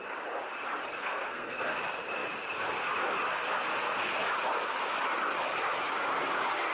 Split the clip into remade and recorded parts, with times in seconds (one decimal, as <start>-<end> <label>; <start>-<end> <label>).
0.0-1.0 recorded; 1.0-1.8 remade; 1.8-6.7 recorded